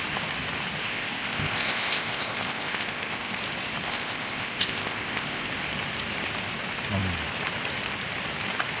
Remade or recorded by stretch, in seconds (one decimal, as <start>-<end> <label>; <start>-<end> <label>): 0.0-0.8 recorded; 0.8-3.4 remade; 3.4-3.9 recorded; 3.9-5.5 remade; 5.5-8.8 recorded